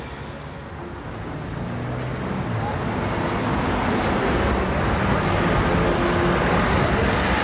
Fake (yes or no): no